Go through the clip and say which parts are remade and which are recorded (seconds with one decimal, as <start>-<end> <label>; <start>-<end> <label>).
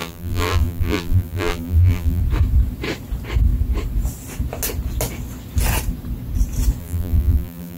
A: 0.0-2.2 remade; 2.2-6.8 recorded; 6.8-7.8 remade